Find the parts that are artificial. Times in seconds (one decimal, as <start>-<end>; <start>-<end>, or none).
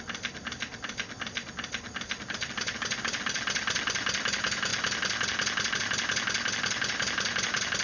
none